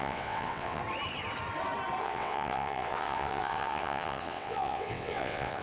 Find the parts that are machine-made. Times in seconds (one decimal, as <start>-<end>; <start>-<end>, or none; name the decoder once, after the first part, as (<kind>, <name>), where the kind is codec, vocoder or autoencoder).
0.0-0.8 (vocoder, WaveNeXt); 2.0-5.6